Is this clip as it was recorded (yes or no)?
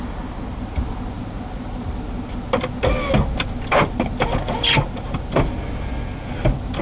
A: yes